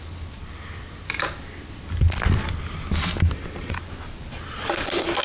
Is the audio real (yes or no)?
yes